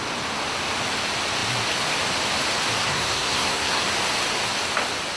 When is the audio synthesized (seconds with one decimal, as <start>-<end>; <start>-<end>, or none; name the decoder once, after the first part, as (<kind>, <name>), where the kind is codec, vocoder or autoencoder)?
2.8-3.8 (codec, SNAC)